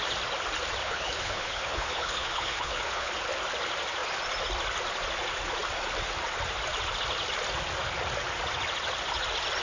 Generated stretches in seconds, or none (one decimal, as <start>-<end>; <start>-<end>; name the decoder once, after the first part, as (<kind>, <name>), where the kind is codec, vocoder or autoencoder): 0.8-3.1 (codec, HILCodec)